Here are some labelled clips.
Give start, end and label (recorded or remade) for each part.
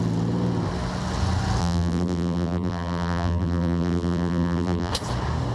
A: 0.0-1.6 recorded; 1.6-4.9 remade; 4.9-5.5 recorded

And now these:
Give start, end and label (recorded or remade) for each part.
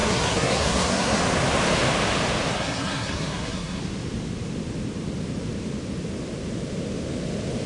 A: 0.0-1.2 remade; 1.2-2.5 recorded; 2.5-3.8 remade; 3.8-7.7 recorded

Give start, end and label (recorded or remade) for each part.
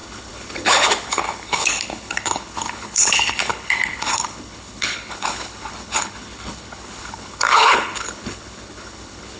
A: 0.0-9.4 remade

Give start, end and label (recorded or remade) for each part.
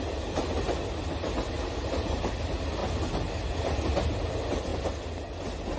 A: 0.0-5.8 recorded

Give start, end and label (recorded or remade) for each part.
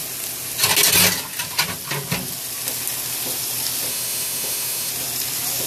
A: 0.0-3.9 recorded; 3.9-4.9 remade; 4.9-5.7 recorded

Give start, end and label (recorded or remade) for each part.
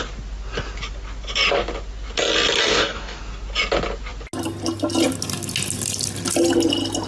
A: 0.0-2.6 recorded; 2.6-3.2 remade; 3.2-7.1 recorded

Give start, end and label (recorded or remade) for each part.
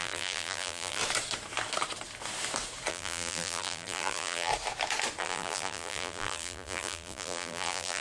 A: 0.0-1.0 remade; 1.0-2.9 recorded; 2.9-4.5 remade; 4.5-5.2 recorded; 5.2-8.0 remade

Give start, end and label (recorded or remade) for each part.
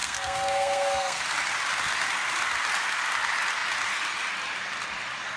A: 0.0-1.2 remade; 1.2-5.4 recorded